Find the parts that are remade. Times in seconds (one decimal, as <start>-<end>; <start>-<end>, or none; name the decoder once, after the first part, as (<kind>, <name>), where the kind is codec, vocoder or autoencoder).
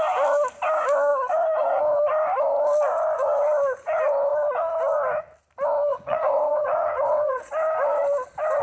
5.9-7.5 (vocoder, WaveNeXt)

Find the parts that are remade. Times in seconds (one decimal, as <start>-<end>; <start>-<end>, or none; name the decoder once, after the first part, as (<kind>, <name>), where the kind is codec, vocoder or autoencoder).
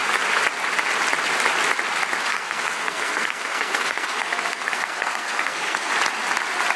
2.3-5.9 (codec, SNAC)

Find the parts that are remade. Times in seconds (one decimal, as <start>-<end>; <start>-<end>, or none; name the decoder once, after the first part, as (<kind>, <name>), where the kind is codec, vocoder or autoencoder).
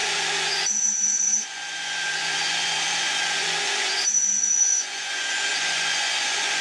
0.0-6.6 (vocoder, Vocos)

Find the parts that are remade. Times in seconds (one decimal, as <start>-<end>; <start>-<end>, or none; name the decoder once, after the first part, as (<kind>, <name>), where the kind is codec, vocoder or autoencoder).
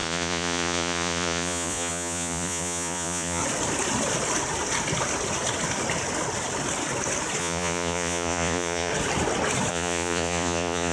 0.0-3.4 (vocoder, Vocos); 7.4-8.9; 9.7-10.9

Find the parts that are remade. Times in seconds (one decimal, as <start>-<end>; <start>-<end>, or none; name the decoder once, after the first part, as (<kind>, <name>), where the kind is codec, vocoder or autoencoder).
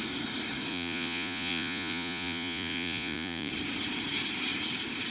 0.7-3.5 (vocoder, Vocos)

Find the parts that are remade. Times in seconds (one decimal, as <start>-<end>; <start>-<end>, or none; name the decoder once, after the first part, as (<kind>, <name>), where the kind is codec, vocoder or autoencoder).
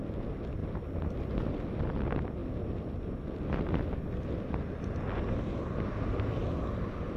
none